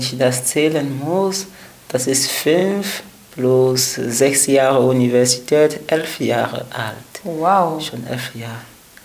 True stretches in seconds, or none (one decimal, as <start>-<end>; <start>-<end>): 0.0-9.0